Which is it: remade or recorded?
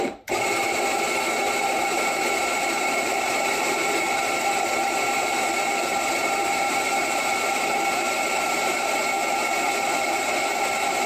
remade